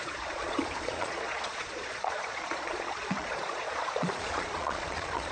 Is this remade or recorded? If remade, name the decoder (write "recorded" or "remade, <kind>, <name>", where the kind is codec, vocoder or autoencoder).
remade, vocoder, Vocos